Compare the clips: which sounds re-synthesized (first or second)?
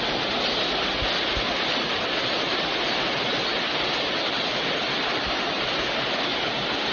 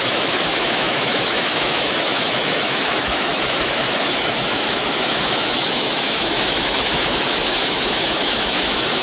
second